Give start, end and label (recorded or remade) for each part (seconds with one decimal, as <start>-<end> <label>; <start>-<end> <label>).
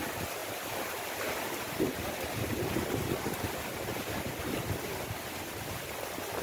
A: 0.0-0.4 recorded; 0.4-1.8 remade; 1.8-3.9 recorded; 3.9-5.8 remade; 5.8-6.4 recorded